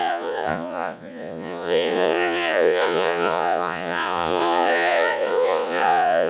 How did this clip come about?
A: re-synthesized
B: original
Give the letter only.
A